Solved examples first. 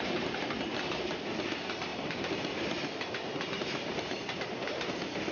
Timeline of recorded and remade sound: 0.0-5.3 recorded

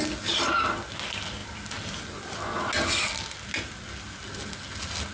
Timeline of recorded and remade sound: 0.0-5.1 recorded

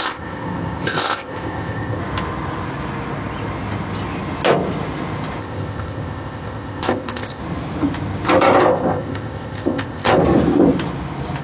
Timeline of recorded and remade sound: 0.0-2.0 remade; 2.0-5.4 recorded; 5.4-7.4 remade; 7.4-8.6 recorded; 8.6-10.2 remade; 10.2-11.4 recorded

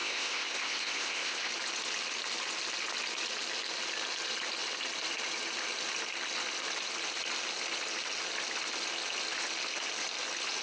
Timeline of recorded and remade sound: 0.0-1.5 remade; 1.5-10.6 recorded

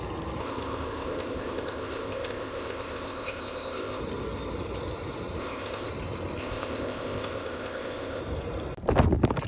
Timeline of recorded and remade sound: 0.0-0.4 recorded; 0.4-4.0 remade; 4.0-5.4 recorded; 5.4-5.9 remade; 5.9-6.4 recorded; 6.4-8.2 remade; 8.2-9.5 recorded

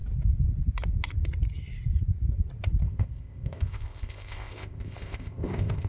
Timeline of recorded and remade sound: 0.0-2.8 recorded; 2.8-5.9 remade

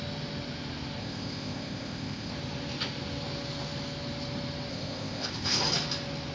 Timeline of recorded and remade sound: 0.0-1.0 recorded; 1.0-2.3 remade; 2.3-4.7 recorded; 4.7-5.6 remade; 5.6-6.3 recorded

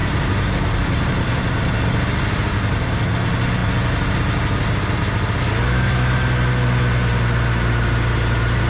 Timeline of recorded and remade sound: 0.0-8.7 recorded